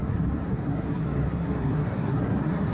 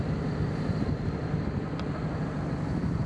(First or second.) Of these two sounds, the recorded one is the second